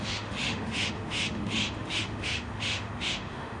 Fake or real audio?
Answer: fake